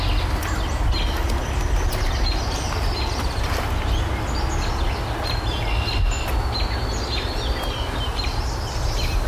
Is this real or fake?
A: real